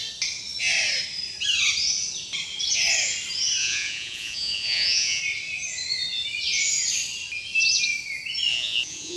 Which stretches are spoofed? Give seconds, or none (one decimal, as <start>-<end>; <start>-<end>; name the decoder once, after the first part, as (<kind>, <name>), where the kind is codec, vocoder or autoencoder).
3.6-5.2 (vocoder, Vocos); 8.5-9.2